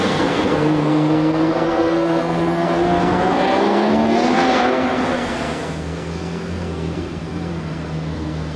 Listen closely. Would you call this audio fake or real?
fake